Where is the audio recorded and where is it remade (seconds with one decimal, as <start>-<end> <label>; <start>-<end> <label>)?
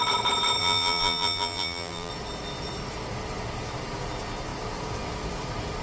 0.0-0.6 recorded; 0.6-2.1 remade; 2.1-5.8 recorded